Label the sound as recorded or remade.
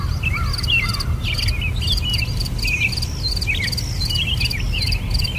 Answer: recorded